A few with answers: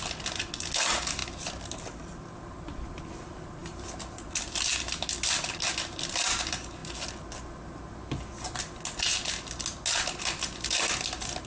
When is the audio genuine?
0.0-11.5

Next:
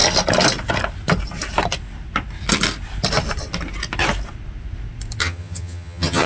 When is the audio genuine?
0.0-5.2

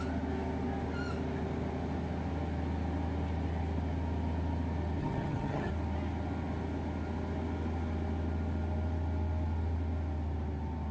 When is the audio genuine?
0.0-5.0; 5.7-10.9

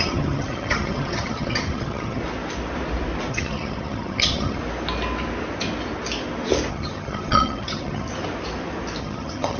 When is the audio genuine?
2.2-3.3; 4.6-6.7; 8.1-9.0

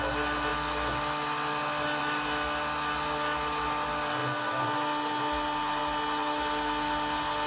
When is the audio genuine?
0.0-7.5